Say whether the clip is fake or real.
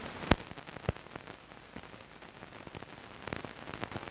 real